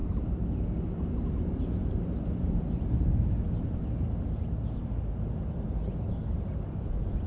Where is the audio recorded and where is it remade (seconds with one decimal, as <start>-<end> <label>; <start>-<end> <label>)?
0.0-7.3 recorded